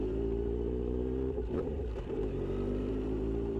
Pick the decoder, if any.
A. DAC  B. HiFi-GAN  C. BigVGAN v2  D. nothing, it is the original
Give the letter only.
C